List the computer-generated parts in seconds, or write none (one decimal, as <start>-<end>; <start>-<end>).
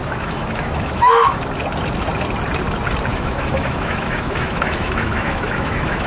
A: 0.0-1.4; 3.1-6.1